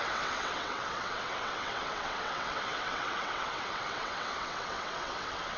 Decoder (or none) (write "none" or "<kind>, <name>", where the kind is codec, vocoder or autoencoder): vocoder, WaveNeXt